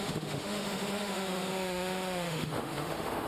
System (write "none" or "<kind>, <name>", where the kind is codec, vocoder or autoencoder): autoencoder, DAC-VAE